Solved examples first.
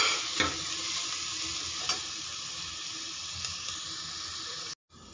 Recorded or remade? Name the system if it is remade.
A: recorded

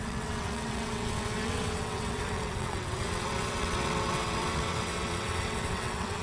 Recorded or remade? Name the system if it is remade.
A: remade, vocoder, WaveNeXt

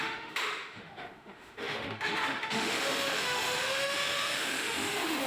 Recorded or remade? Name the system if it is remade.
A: remade, autoencoder, DAC-VAE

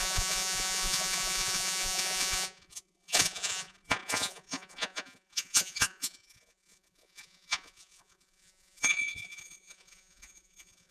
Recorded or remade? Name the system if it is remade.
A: remade, vocoder, Vocos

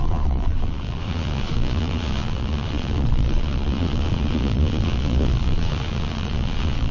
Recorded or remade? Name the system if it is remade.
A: remade, vocoder, Vocos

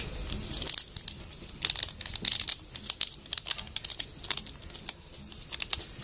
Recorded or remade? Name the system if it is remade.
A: recorded